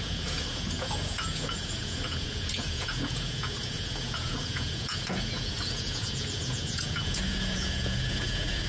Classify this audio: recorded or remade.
remade